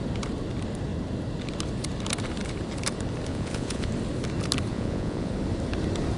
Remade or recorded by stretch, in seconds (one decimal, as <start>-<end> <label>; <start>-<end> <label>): 0.0-3.3 recorded; 3.3-3.9 remade; 3.9-4.7 recorded; 4.7-5.3 remade; 5.3-6.2 recorded